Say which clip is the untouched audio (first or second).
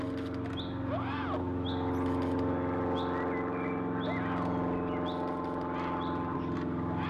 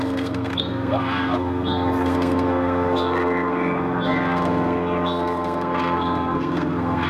first